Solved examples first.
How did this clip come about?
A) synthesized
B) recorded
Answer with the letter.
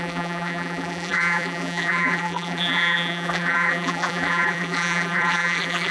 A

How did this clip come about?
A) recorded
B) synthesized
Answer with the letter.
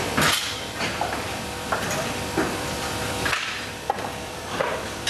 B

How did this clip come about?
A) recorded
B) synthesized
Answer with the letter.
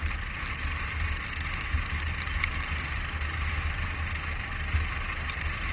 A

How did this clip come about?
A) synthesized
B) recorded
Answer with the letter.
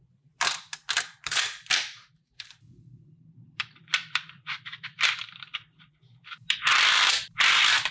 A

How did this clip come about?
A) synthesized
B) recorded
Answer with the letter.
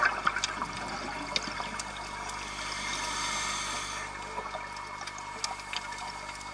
B